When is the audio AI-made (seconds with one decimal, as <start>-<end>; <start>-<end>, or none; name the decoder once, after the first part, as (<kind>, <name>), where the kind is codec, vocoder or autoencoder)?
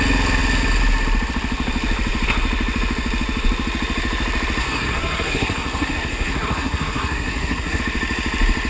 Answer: 4.6-7.8 (codec, SNAC)